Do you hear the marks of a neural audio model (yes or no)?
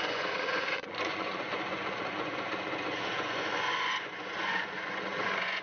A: yes